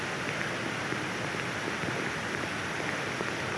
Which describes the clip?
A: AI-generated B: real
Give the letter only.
B